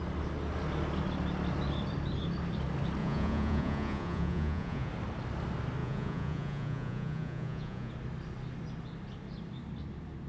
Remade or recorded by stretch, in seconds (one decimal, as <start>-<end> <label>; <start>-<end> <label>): 0.0-3.0 recorded; 3.0-4.9 remade; 4.9-5.8 recorded; 5.8-7.9 remade; 7.9-10.3 recorded